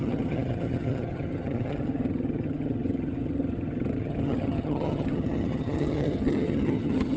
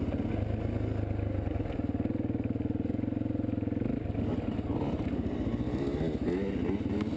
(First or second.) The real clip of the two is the second